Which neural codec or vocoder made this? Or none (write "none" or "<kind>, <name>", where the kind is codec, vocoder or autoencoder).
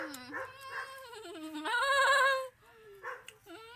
none